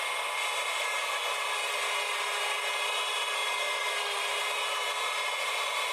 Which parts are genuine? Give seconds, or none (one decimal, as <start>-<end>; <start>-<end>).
0.0-5.9